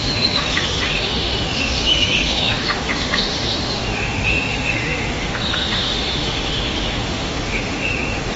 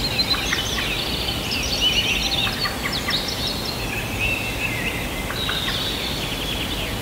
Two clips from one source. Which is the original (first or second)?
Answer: second